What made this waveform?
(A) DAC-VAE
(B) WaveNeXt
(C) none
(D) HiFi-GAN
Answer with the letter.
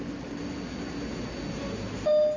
C